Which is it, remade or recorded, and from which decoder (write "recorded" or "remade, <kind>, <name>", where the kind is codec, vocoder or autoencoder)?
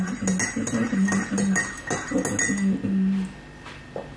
recorded